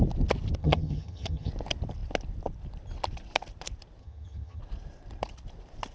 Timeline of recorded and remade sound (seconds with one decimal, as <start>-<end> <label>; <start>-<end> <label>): 0.0-0.6 recorded; 0.6-1.5 remade; 1.5-4.0 recorded; 4.0-4.6 remade; 4.6-5.9 recorded